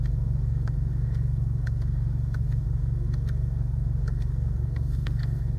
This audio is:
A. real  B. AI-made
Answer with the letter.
B